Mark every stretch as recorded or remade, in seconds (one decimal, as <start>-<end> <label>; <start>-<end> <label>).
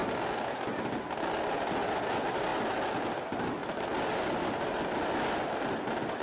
0.0-6.2 recorded